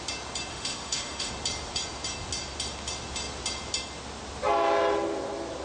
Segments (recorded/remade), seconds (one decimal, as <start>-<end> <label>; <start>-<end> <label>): 0.0-0.5 recorded; 0.5-1.3 remade; 1.3-5.6 recorded